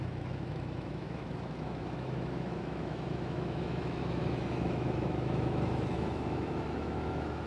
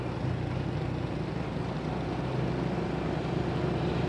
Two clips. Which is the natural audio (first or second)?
second